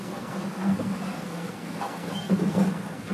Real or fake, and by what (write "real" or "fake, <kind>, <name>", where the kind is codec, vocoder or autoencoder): fake, codec, SNAC